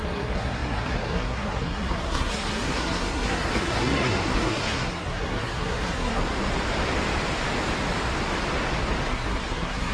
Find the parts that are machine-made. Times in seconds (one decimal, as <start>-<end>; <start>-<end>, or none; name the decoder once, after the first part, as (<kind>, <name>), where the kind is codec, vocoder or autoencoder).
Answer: 0.0-6.2 (codec, SNAC); 9.1-9.9